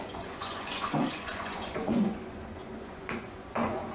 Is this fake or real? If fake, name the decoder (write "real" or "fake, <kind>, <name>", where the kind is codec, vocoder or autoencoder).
fake, vocoder, Vocos